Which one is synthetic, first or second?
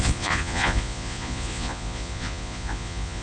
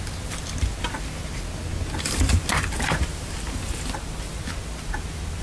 first